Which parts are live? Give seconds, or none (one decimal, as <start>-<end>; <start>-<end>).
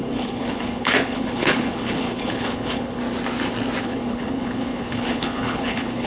3.0-3.8